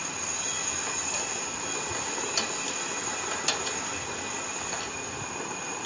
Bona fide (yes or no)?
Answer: yes